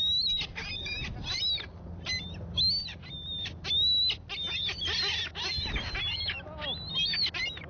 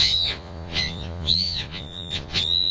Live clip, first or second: first